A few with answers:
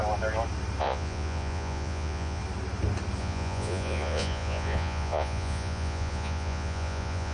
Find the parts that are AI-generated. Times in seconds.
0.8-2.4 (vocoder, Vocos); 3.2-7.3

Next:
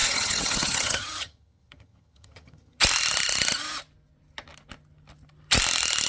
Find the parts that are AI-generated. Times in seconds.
0.0-2.8 (vocoder, HiFi-GAN)

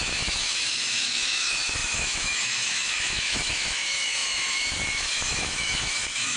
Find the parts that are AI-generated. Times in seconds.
0.0-6.4 (autoencoder, DAC-VAE)